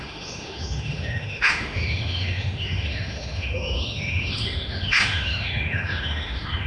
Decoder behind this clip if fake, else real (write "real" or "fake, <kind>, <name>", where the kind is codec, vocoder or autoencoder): fake, autoencoder, DAC-VAE